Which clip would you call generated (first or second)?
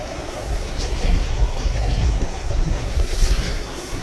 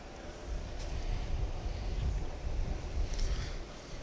first